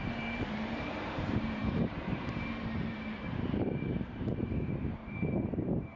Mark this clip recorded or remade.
remade